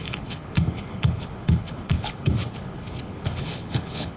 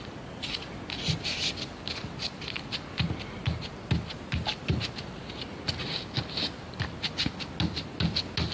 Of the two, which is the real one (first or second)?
second